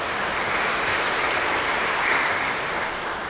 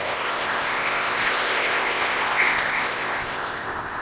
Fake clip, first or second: second